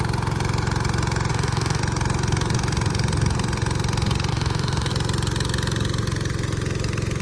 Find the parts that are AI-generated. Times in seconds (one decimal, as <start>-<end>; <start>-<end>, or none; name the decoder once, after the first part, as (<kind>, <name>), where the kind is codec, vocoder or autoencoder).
1.3-1.8 (autoencoder, DAC-VAE); 4.3-4.9